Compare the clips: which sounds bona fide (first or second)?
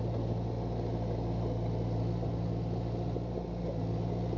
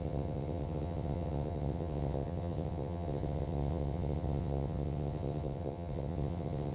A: first